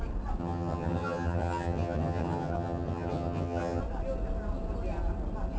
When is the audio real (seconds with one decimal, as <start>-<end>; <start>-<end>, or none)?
0.0-0.4; 3.8-5.6